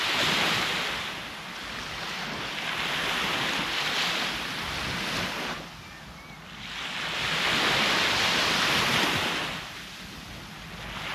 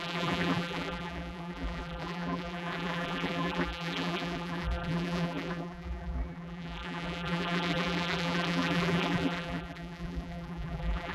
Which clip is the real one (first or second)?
first